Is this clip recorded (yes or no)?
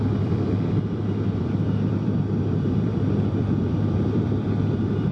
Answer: no